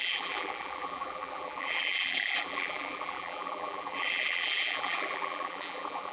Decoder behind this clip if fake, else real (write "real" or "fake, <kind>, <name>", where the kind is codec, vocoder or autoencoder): fake, vocoder, BigVGAN v2